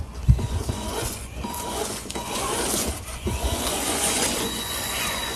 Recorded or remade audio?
remade